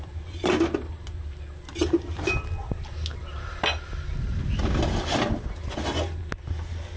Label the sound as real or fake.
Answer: real